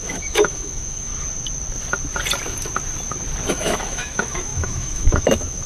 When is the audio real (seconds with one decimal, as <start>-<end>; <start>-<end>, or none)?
1.1-3.5